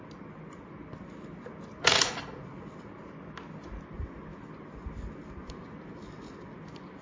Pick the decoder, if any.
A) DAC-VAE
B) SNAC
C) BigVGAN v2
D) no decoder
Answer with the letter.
D